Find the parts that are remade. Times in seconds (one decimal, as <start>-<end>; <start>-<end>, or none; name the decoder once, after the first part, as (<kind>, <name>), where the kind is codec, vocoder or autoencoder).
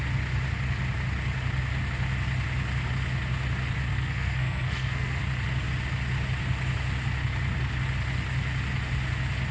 3.9-5.2 (codec, SNAC)